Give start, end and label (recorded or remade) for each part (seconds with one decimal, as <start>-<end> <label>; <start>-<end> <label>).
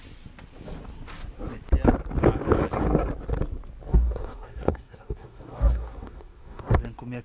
0.0-3.9 recorded; 3.9-6.8 remade; 6.8-7.2 recorded